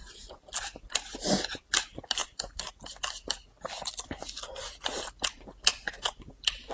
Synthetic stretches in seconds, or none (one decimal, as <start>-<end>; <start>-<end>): 2.2-2.7